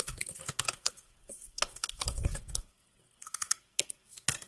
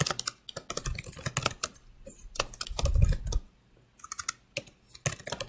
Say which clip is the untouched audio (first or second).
second